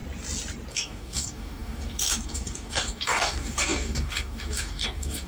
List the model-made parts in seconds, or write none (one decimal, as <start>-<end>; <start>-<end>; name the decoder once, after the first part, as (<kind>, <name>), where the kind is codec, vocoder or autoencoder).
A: 0.7-5.3 (codec, DAC)